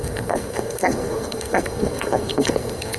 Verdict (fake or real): fake